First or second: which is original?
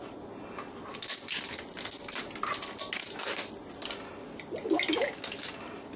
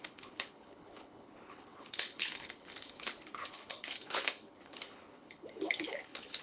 first